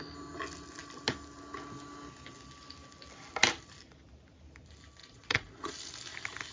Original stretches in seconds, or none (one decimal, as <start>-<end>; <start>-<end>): 0.0-5.0; 5.7-6.5